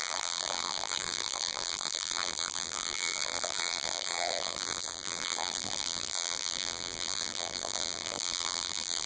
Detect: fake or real fake